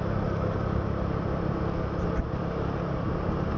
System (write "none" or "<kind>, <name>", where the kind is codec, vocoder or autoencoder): none